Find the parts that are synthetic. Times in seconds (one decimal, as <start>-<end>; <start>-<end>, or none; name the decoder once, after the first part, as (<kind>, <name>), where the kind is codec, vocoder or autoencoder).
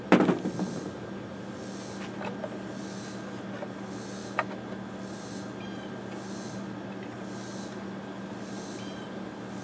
none